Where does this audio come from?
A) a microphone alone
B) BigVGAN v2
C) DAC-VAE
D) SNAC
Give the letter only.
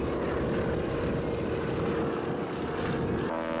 A